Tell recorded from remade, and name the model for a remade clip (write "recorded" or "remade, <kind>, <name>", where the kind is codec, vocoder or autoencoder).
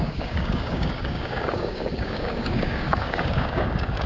remade, codec, DAC